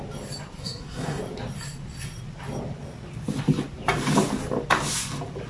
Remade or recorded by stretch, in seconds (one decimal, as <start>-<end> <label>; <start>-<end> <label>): 0.0-0.6 recorded; 0.6-1.2 remade; 1.2-5.5 recorded